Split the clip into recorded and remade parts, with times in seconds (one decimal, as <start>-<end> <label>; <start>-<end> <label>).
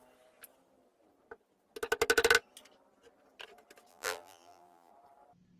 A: 0.0-3.9 recorded; 3.9-4.9 remade; 4.9-5.6 recorded